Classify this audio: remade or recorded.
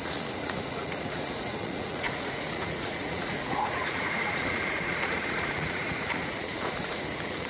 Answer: remade